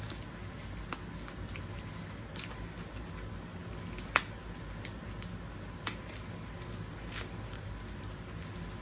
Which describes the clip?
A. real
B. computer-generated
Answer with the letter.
A